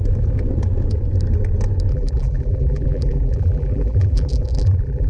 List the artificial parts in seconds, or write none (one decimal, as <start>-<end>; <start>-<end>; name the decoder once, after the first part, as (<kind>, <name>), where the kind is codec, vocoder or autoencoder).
1.9-5.1 (vocoder, BigVGAN v2)